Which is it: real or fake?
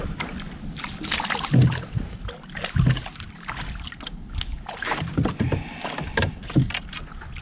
real